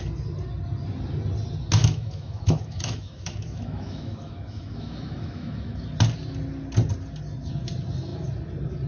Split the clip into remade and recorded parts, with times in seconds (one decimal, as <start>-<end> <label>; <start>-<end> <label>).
0.0-1.8 recorded; 1.8-5.8 remade; 5.8-8.9 recorded